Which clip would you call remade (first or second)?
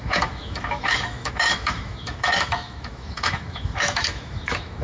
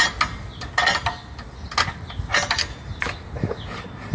first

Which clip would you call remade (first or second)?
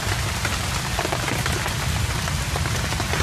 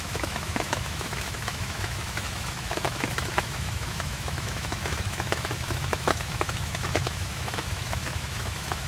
second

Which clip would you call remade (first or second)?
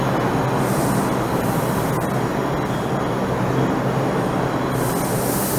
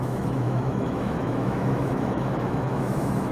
second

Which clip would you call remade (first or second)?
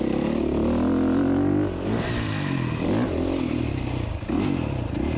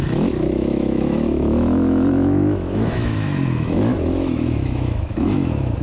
second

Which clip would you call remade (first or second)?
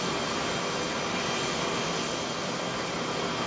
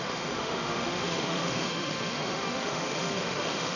second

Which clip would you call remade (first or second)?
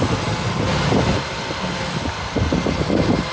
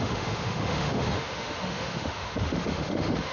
second